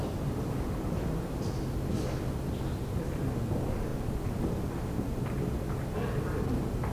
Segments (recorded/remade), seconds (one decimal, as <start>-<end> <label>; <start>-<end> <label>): 0.0-6.9 recorded

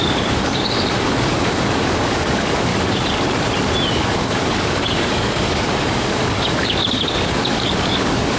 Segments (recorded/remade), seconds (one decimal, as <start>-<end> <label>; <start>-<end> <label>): 0.0-2.7 remade; 2.7-3.9 recorded; 3.9-8.4 remade

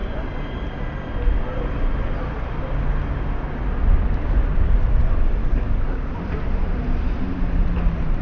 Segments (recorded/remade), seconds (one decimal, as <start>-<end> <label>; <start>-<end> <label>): 0.0-5.4 recorded; 5.4-6.1 remade; 6.1-8.2 recorded

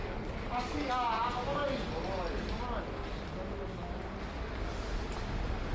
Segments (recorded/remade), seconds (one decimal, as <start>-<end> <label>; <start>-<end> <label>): 0.0-0.9 remade; 0.9-5.7 recorded

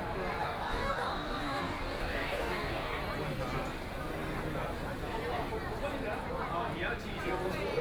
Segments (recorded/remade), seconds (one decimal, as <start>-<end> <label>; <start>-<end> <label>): 0.0-0.4 recorded; 0.4-3.0 remade; 3.0-7.8 recorded

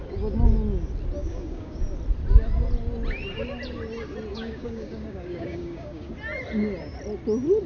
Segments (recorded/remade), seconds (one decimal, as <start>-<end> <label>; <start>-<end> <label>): 0.0-1.2 recorded; 1.2-1.8 remade; 1.8-4.3 recorded; 4.3-6.1 remade; 6.1-7.7 recorded

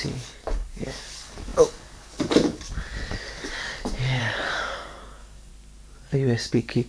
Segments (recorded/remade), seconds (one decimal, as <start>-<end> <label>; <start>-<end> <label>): 0.0-5.5 remade; 5.5-6.5 recorded; 6.5-6.9 remade

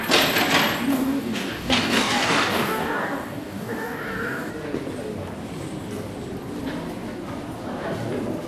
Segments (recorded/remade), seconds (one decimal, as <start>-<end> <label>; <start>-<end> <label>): 0.0-0.9 recorded; 0.9-4.5 remade; 4.5-8.5 recorded